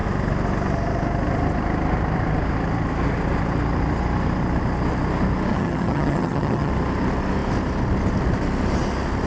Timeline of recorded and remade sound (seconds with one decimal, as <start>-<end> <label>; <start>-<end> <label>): 0.0-5.5 recorded; 5.5-6.7 remade; 6.7-9.3 recorded